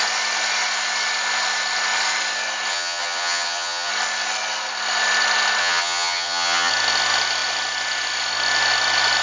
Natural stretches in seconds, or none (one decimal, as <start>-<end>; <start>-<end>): 0.0-2.7; 3.9-5.6; 6.7-9.2